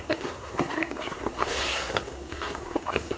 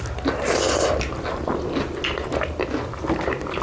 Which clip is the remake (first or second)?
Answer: first